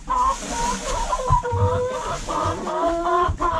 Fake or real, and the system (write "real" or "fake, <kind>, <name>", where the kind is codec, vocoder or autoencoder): real